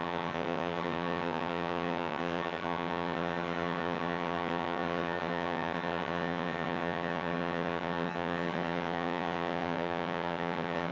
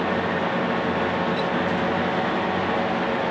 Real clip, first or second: second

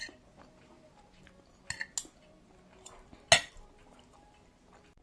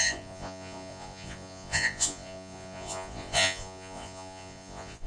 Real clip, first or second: first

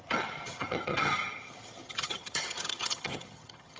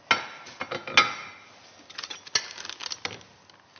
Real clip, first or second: second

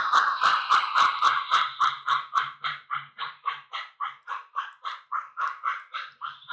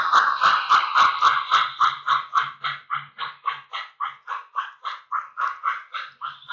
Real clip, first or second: second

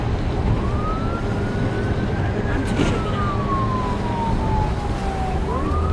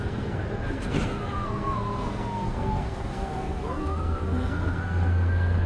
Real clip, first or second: first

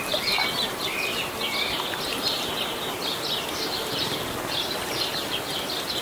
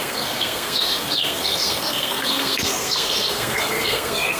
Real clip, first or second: first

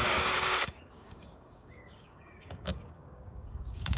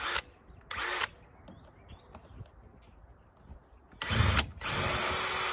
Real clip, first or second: second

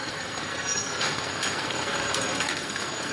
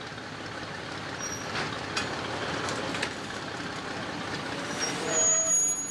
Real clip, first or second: second